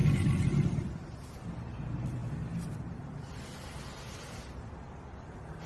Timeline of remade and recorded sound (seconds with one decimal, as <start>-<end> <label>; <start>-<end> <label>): 0.0-5.7 recorded